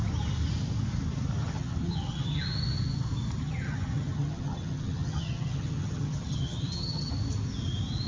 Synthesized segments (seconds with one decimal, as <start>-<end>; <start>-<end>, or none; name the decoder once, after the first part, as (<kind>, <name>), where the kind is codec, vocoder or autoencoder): 1.4-2.4 (vocoder, HiFi-GAN); 3.4-7.1